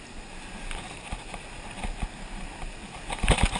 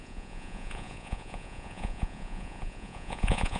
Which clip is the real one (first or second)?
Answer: first